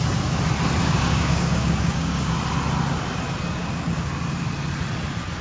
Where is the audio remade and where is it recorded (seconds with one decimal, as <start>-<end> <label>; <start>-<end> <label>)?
0.0-0.8 recorded; 0.8-2.3 remade; 2.3-3.6 recorded; 3.6-4.1 remade; 4.1-5.4 recorded